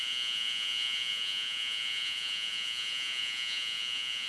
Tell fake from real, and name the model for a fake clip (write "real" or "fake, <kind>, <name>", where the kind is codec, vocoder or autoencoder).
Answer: fake, vocoder, Vocos